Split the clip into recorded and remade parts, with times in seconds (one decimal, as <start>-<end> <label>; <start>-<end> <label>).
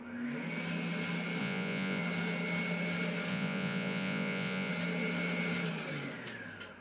0.0-1.4 recorded; 1.4-2.0 remade; 2.0-3.3 recorded; 3.3-4.7 remade; 4.7-6.8 recorded